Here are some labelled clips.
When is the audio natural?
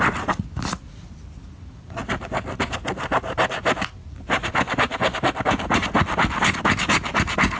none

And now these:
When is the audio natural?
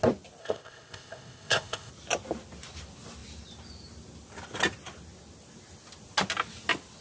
0.0-0.4; 1.9-7.0